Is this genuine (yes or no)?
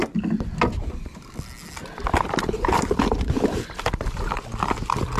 yes